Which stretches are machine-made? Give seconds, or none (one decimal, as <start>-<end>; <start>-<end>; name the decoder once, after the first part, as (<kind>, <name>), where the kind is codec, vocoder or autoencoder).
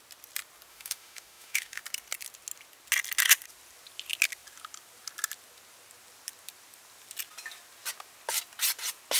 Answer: 0.7-1.8 (autoencoder, DAC-VAE)